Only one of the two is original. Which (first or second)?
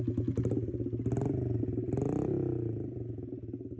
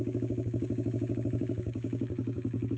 first